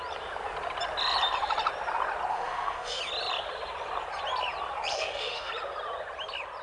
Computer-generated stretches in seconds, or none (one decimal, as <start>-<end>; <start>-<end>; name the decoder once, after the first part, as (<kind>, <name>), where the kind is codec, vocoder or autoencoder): 2.3-3.0 (autoencoder, DAC-VAE); 4.9-5.5